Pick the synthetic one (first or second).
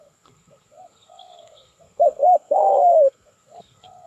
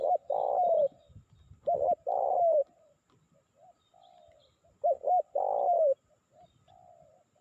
first